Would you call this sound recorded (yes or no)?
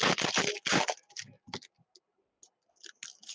yes